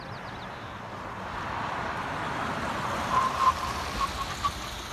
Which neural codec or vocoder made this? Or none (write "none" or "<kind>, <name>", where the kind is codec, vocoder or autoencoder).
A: none